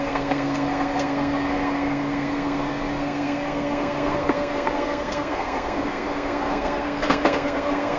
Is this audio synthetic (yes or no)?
yes